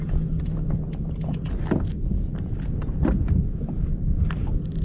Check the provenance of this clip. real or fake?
real